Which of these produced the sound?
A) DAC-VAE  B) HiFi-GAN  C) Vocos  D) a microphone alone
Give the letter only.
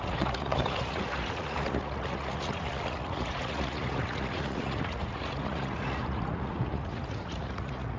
C